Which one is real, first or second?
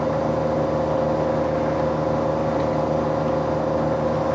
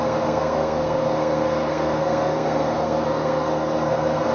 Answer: first